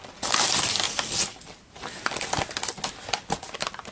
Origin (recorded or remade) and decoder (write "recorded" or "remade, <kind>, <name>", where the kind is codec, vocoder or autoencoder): recorded